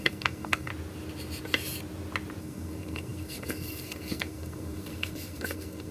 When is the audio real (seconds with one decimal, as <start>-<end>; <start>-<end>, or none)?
0.7-2.4